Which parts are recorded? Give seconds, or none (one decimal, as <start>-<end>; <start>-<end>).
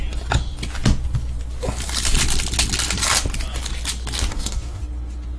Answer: 0.0-4.3; 4.8-5.4